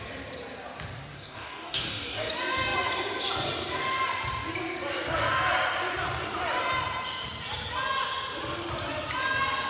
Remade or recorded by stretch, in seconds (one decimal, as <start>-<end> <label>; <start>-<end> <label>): 0.0-1.1 recorded; 1.1-2.3 remade; 2.3-9.7 recorded